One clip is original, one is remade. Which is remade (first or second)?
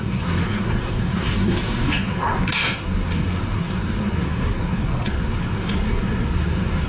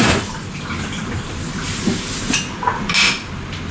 first